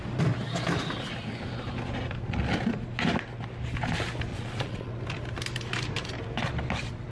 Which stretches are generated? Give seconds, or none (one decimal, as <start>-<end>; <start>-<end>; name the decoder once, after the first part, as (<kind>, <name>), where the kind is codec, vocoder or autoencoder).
4.3-4.9 (vocoder, Vocos)